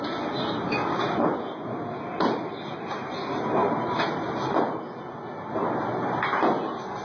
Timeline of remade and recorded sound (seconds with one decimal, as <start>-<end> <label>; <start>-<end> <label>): 0.0-2.1 recorded; 2.1-2.9 remade; 2.9-3.6 recorded; 3.6-4.7 remade; 4.7-7.0 recorded